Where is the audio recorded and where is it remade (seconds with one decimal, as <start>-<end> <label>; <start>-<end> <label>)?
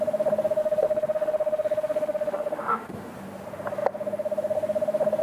0.0-0.6 recorded; 0.6-3.1 remade; 3.1-5.2 recorded